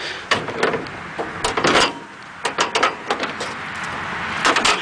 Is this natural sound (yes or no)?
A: yes